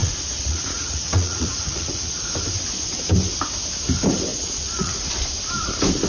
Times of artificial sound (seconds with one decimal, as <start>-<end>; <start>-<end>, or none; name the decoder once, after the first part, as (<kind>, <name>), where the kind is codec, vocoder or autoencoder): 0.0-2.3 (vocoder, Vocos); 4.3-5.1